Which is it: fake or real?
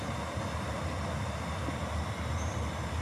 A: real